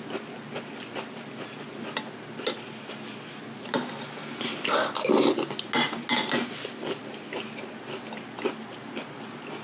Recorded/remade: recorded